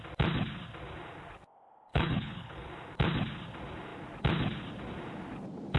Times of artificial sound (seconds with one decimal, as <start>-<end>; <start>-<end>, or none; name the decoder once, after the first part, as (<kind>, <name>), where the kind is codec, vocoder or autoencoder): 1.9-2.7 (codec, HILCodec)